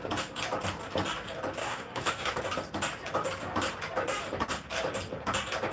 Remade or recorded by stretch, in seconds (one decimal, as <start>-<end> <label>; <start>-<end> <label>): 0.0-1.6 recorded; 1.6-2.4 remade; 2.4-5.7 recorded

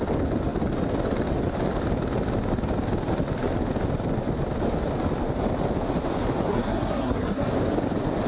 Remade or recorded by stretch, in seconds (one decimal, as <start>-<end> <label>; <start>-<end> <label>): 0.0-6.5 recorded; 6.5-7.5 remade; 7.5-8.3 recorded

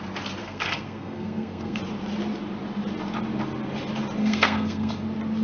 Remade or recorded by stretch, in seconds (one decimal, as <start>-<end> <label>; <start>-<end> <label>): 0.0-0.4 recorded; 0.4-1.8 remade; 1.8-4.2 recorded; 4.2-4.9 remade; 4.9-5.4 recorded

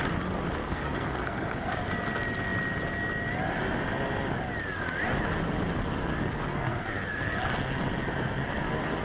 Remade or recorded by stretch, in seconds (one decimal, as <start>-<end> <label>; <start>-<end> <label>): 0.0-0.6 recorded; 0.6-1.9 remade; 1.9-6.5 recorded; 6.5-7.4 remade; 7.4-9.0 recorded

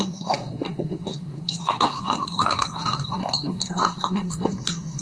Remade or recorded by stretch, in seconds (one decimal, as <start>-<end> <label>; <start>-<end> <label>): 0.0-5.0 remade

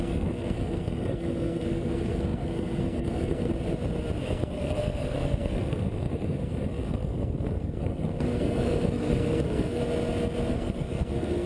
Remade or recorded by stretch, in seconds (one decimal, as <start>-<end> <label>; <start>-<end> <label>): 0.0-3.5 remade; 3.5-4.2 recorded; 4.2-9.8 remade; 9.8-10.5 recorded; 10.5-11.5 remade

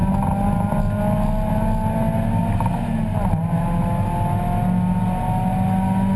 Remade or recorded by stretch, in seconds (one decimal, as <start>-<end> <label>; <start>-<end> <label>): 0.0-6.2 recorded

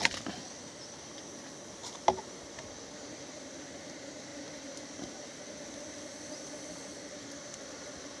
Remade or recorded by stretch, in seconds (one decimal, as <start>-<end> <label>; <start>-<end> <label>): 0.0-8.2 recorded